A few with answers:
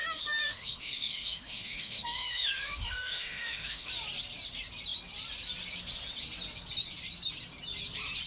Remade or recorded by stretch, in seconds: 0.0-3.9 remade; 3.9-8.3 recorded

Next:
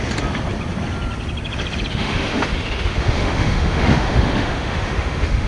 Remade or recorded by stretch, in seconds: 0.0-1.9 recorded; 1.9-5.5 remade